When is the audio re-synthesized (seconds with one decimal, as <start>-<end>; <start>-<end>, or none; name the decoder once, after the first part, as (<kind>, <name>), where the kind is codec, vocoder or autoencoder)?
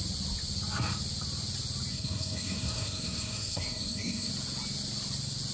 1.9-4.3 (codec, SNAC)